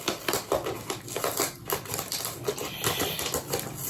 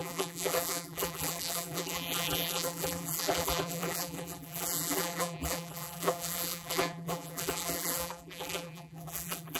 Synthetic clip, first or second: second